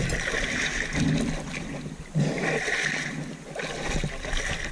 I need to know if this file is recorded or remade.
recorded